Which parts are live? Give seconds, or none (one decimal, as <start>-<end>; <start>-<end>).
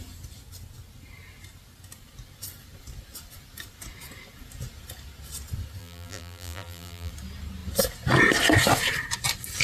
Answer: 0.0-5.8; 7.1-9.6